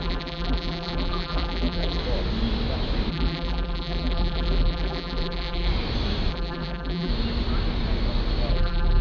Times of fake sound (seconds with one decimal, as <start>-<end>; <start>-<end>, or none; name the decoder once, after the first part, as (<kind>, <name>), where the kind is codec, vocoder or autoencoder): 0.0-2.0 (vocoder, BigVGAN v2); 3.1-5.7; 6.3-7.1; 8.5-9.0